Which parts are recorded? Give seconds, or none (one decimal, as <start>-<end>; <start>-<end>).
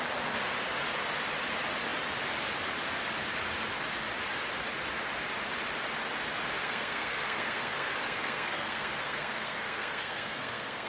0.0-6.6